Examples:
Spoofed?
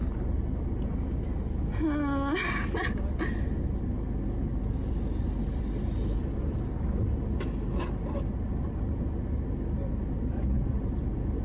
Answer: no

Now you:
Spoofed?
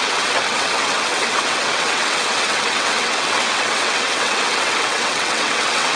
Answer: yes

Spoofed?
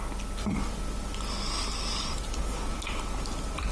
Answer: no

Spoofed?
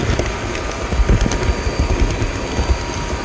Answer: no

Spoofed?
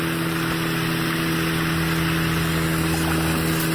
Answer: no